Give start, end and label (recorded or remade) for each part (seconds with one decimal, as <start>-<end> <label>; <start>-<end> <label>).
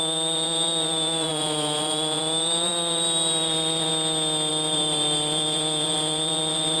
0.0-3.9 remade; 3.9-4.5 recorded; 4.5-6.8 remade